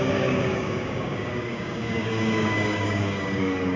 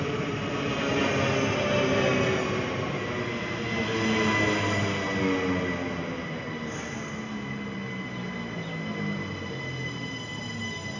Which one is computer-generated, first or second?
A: first